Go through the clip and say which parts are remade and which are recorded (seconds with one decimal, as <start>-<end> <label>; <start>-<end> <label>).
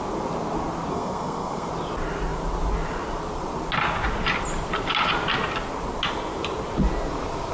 0.0-0.9 recorded; 0.9-1.7 remade; 1.7-7.5 recorded